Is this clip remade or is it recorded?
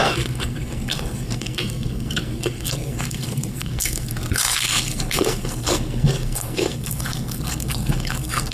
remade